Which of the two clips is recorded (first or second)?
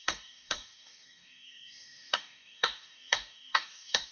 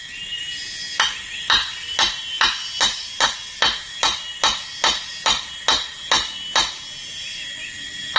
second